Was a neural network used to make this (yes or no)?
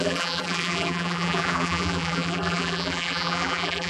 yes